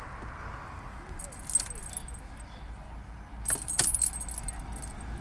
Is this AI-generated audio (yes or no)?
no